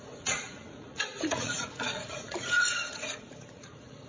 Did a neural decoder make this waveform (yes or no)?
yes